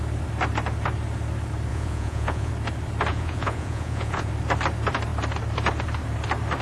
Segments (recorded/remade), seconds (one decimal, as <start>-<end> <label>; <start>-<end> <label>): 0.0-1.7 recorded; 1.7-2.5 remade; 2.5-3.1 recorded; 3.1-4.3 remade; 4.3-6.6 recorded